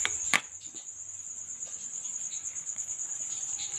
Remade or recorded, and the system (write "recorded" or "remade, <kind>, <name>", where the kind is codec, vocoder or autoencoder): remade, vocoder, Vocos